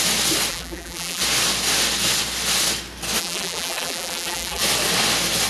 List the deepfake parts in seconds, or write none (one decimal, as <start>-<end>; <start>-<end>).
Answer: 0.5-1.2; 3.2-4.6